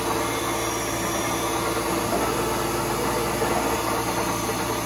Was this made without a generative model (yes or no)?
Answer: yes